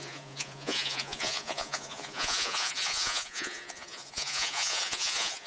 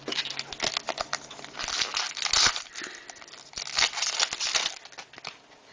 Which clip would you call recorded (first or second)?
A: second